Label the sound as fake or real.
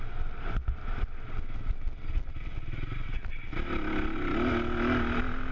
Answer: real